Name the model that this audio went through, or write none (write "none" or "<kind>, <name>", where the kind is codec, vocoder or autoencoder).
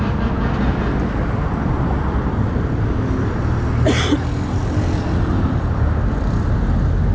none